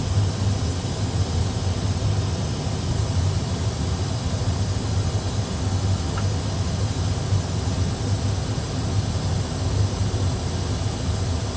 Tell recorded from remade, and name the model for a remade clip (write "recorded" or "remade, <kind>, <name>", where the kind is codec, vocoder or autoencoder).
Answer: recorded